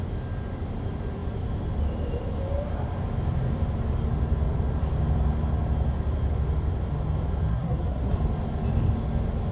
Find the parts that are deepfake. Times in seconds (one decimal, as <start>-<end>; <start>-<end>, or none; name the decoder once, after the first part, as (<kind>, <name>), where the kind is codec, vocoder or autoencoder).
7.5-8.1 (codec, SNAC)